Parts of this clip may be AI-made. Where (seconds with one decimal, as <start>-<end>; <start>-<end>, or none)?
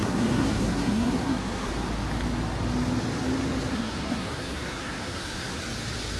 0.0-1.7; 3.7-5.6